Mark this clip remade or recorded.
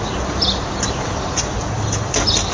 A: recorded